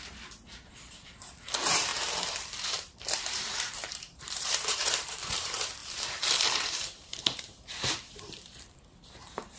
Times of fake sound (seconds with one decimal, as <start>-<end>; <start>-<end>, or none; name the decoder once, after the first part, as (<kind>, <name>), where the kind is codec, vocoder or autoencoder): 0.0-9.6 (vocoder, BigVGAN v2)